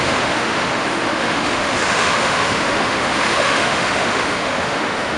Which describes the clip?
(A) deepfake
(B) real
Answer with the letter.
A